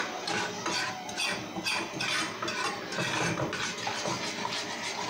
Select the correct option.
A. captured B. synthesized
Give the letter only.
A